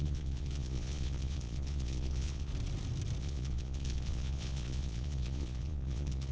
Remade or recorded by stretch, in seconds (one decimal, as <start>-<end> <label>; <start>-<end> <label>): 0.0-2.5 remade; 2.5-3.2 recorded; 3.2-6.3 remade